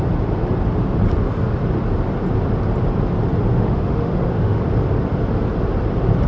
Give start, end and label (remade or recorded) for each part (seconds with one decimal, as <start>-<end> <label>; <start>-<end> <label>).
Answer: 0.0-3.5 recorded; 3.5-4.6 remade; 4.6-6.3 recorded